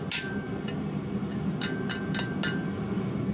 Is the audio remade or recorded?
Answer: recorded